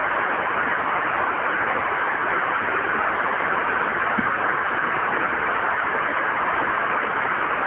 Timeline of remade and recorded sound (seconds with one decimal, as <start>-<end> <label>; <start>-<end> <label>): 0.0-1.7 recorded; 1.7-2.2 remade; 2.2-6.3 recorded; 6.3-7.7 remade